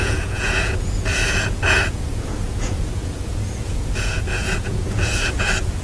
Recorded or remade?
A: remade